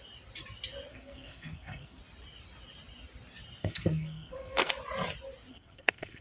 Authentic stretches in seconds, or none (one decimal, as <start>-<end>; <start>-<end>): 0.0-0.9; 2.0-3.6; 4.7-5.5